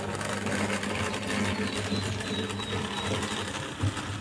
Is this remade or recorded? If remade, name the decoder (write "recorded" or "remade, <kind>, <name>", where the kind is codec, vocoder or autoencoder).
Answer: recorded